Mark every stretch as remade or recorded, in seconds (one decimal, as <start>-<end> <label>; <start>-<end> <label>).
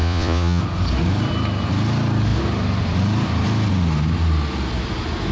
0.0-0.6 remade; 0.6-5.3 recorded